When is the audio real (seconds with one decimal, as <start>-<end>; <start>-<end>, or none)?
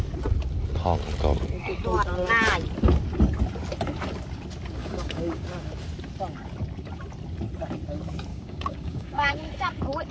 0.0-4.8; 5.4-8.3; 9.3-10.1